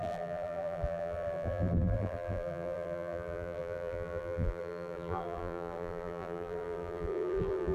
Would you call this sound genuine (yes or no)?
no